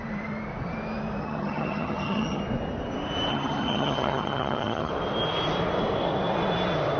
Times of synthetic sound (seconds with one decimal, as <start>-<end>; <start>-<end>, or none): 1.2-2.4; 3.3-4.9